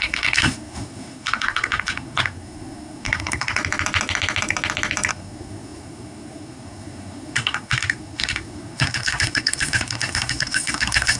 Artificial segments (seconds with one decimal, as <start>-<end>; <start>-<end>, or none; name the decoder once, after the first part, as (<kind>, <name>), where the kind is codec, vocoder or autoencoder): 0.0-3.6 (codec, SNAC); 5.1-11.2